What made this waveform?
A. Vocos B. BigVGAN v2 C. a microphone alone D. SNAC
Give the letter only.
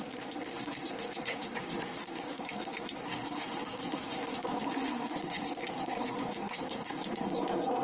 D